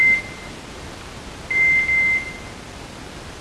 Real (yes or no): yes